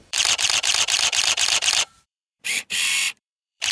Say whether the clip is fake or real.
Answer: fake